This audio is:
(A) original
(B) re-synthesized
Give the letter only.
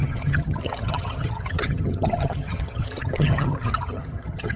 B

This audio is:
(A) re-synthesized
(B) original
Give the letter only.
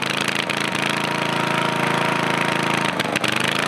A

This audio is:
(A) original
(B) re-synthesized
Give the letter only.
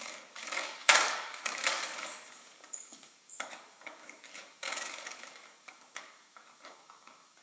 B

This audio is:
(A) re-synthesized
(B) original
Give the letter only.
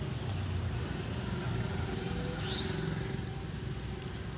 B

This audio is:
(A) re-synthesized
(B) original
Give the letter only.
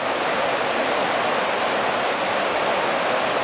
B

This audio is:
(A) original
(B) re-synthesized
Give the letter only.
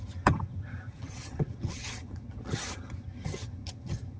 B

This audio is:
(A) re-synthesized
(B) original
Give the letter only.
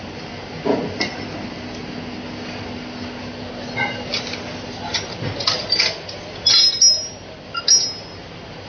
B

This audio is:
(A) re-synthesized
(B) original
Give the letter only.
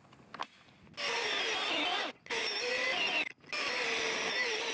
B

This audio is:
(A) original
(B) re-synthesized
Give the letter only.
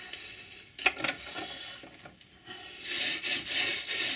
A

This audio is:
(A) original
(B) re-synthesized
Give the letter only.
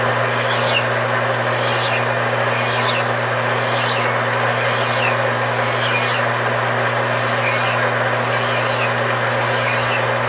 A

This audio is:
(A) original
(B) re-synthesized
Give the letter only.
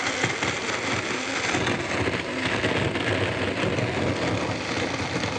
A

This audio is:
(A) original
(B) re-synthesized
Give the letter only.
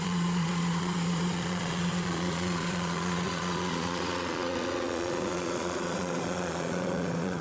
B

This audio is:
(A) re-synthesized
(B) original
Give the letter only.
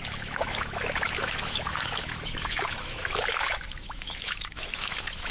A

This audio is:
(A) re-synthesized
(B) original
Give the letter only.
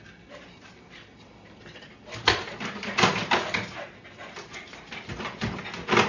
B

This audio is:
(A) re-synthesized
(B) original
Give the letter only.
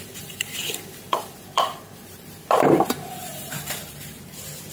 A